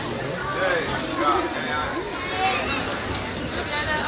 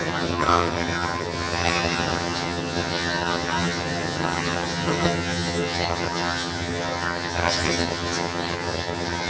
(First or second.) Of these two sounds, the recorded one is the first